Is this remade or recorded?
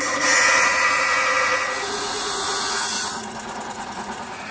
remade